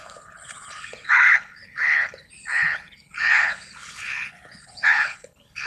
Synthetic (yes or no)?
yes